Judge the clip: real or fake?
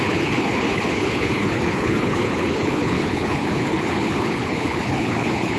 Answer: fake